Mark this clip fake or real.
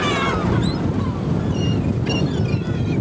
real